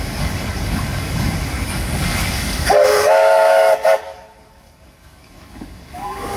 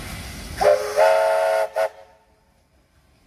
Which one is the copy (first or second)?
first